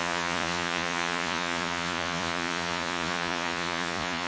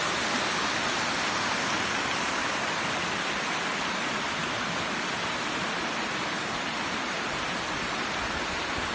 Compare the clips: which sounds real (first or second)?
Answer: second